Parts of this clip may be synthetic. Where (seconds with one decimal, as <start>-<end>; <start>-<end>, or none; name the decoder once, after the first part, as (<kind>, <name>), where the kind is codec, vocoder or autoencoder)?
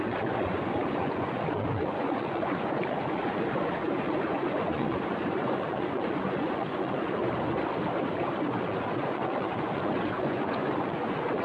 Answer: 0.0-7.2 (vocoder, Vocos); 8.6-11.4